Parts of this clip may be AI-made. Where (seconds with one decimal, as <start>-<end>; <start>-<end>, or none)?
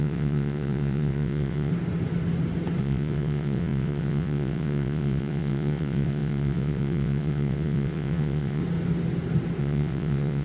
0.0-1.7; 2.8-8.6; 9.6-10.4